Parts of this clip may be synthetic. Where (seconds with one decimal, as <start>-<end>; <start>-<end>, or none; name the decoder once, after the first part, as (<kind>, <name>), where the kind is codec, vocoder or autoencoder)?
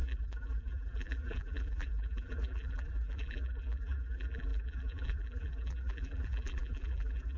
0.0-7.4 (vocoder, BigVGAN v2)